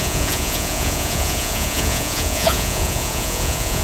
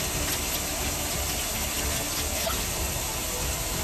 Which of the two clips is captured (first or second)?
second